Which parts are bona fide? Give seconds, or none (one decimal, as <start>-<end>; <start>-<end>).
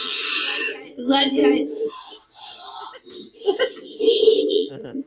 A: 1.4-4.5